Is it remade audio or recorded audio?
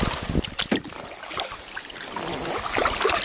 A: recorded